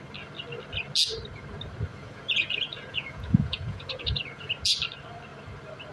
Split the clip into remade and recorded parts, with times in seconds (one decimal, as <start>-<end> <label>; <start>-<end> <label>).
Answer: 0.0-1.9 recorded; 1.9-4.5 remade; 4.5-5.9 recorded